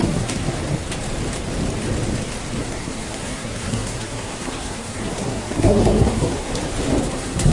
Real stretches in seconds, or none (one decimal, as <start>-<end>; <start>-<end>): 0.6-2.6; 6.5-7.0